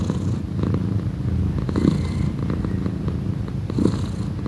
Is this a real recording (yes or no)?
yes